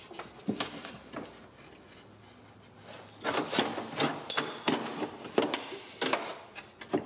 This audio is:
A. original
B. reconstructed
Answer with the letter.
A